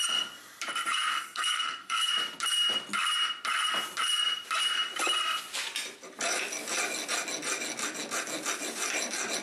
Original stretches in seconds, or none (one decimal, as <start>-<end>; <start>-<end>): 0.0-1.1; 2.1-9.4